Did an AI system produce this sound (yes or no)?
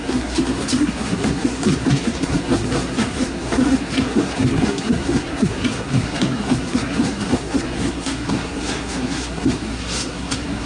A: yes